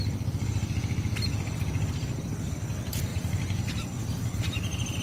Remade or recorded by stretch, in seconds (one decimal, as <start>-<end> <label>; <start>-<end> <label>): 0.0-5.0 recorded